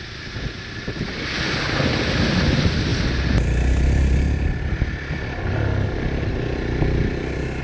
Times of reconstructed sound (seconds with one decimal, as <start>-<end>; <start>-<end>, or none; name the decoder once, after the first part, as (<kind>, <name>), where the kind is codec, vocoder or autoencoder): none